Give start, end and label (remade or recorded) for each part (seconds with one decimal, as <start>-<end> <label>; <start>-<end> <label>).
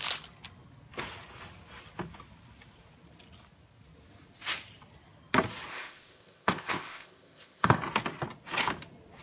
0.0-5.7 recorded; 5.7-7.8 remade; 7.8-9.2 recorded